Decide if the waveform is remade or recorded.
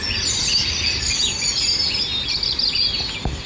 recorded